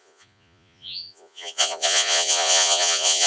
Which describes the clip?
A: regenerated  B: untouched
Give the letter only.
A